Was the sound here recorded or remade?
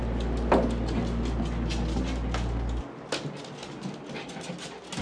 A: recorded